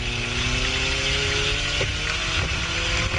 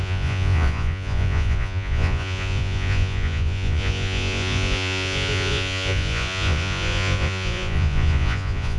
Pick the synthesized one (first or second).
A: second